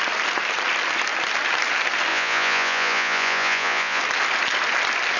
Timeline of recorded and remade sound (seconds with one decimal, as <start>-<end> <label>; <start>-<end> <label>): 0.0-2.1 recorded; 2.1-4.0 remade; 4.0-5.2 recorded